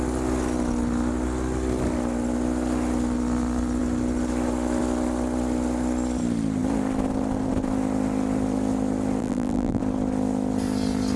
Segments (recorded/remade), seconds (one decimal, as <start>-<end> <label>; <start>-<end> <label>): 0.0-9.2 recorded; 9.2-9.8 remade; 9.8-11.2 recorded